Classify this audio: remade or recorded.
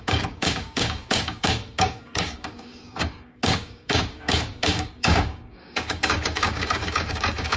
remade